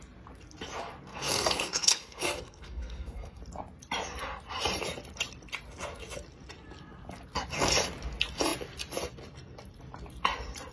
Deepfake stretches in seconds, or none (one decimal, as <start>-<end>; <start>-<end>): 1.1-3.4